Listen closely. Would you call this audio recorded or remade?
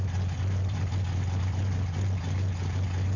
recorded